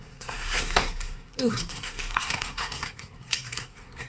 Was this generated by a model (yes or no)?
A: yes